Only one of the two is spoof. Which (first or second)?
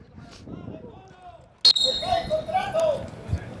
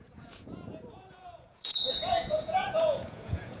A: second